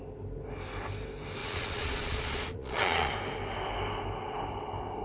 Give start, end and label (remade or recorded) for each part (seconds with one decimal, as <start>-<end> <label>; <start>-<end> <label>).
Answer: 0.0-1.4 recorded; 1.4-3.1 remade; 3.1-5.0 recorded